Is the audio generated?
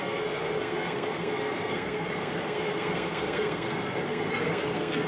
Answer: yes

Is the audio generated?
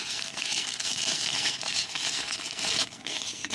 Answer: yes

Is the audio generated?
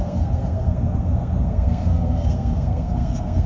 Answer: yes